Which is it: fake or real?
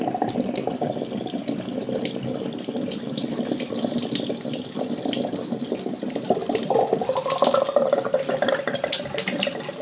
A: real